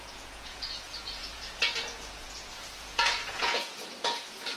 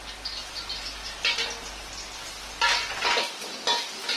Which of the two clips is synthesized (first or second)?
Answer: first